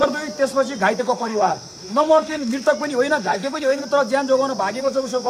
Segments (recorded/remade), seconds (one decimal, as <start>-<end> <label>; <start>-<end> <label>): 0.0-1.0 recorded; 1.0-2.5 remade; 2.5-3.2 recorded; 3.2-3.8 remade; 3.8-4.8 recorded; 4.8-5.3 remade